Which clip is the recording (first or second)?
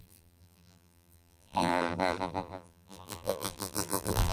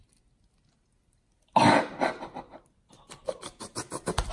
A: second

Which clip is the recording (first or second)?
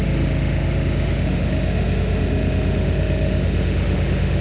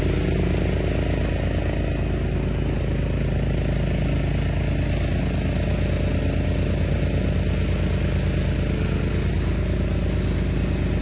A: second